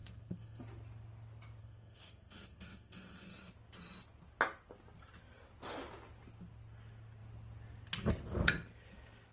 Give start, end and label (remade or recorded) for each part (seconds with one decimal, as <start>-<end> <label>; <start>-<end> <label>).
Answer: 0.0-0.6 remade; 0.6-1.6 recorded; 1.6-3.5 remade; 3.5-9.3 recorded